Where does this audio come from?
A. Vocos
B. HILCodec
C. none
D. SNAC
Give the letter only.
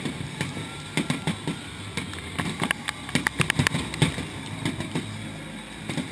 C